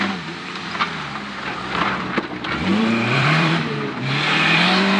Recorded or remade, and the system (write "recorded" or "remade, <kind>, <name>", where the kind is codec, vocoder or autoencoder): remade, vocoder, BigVGAN v2